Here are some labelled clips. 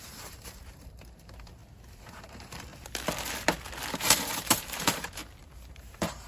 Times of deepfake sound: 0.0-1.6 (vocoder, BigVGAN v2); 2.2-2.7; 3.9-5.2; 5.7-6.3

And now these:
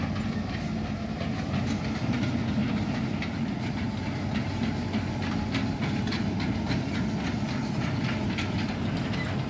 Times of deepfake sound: none

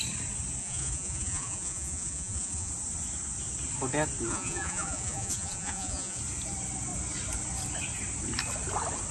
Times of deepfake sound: 0.6-2.7 (vocoder, Vocos); 4.3-6.2

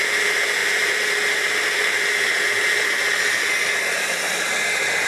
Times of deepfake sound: 0.0-5.1 (vocoder, BigVGAN v2)

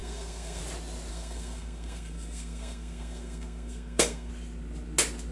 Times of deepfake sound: 0.0-0.6 (codec, SNAC); 1.1-4.3